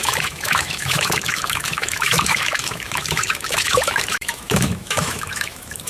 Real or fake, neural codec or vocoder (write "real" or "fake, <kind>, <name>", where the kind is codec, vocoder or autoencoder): fake, autoencoder, DAC-VAE